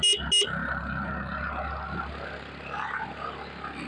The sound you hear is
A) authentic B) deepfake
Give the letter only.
A